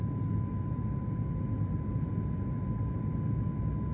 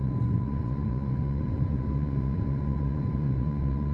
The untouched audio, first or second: first